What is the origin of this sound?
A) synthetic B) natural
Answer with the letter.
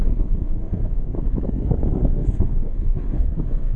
A